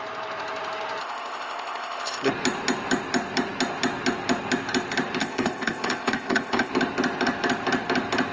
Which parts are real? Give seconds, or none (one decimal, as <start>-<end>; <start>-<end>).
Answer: 0.0-1.0; 2.3-5.2; 6.7-8.3